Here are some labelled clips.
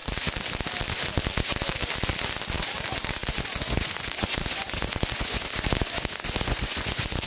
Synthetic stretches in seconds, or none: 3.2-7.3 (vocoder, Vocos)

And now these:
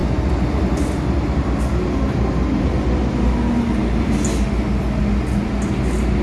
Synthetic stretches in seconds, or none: none

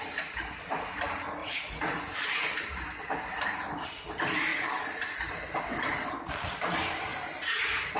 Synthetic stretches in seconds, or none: 1.4-2.1 (vocoder, Vocos)

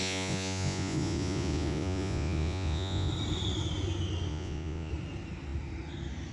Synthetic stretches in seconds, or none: 0.0-3.1 (vocoder, Vocos); 4.3-4.9

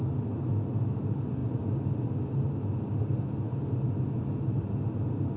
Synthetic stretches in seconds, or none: none

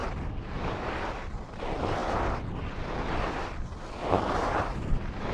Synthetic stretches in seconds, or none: none

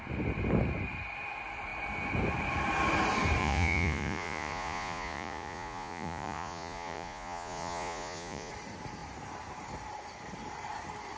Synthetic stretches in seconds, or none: 3.4-8.5 (vocoder, Vocos)